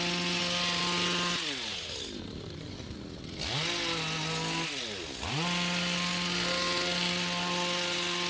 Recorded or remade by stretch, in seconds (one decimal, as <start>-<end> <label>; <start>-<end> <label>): 0.0-8.3 recorded